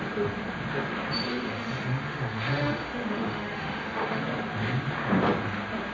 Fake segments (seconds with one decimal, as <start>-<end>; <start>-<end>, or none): 1.3-4.2